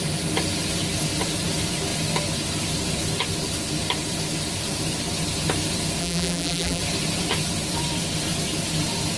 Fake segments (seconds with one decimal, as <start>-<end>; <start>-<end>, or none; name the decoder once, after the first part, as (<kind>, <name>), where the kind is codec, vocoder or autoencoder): 6.0-6.8 (vocoder, BigVGAN v2)